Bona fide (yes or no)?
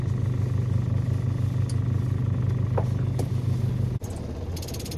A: yes